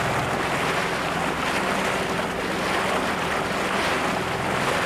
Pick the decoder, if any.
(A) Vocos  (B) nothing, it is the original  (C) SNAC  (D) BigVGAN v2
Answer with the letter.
B